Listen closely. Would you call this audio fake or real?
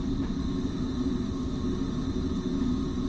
real